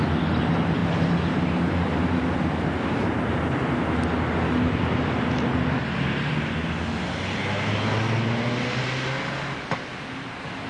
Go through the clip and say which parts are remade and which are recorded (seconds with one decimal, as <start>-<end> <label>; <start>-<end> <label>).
0.0-10.7 recorded